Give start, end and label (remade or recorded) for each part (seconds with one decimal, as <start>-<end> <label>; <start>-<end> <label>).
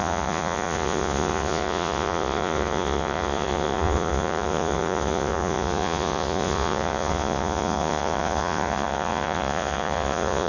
0.0-10.5 remade